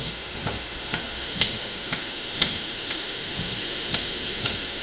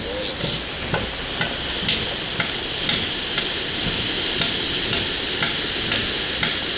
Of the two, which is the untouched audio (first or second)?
second